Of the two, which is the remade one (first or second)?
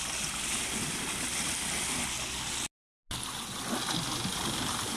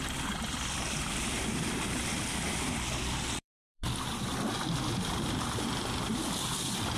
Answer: second